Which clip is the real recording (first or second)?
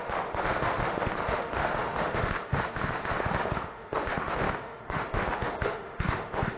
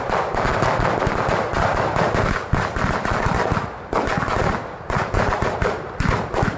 second